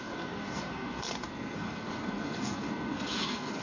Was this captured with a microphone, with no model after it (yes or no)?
no